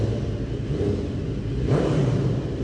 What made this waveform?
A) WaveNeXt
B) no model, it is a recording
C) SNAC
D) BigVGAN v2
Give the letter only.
B